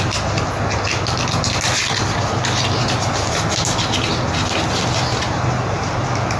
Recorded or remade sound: recorded